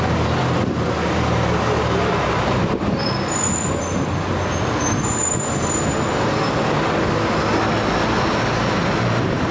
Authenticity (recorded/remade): recorded